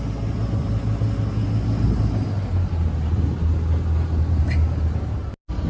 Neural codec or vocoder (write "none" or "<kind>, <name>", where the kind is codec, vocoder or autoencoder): none